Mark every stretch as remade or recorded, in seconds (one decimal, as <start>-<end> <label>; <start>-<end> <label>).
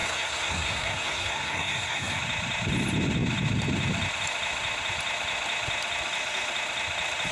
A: 0.0-2.2 remade; 2.2-7.3 recorded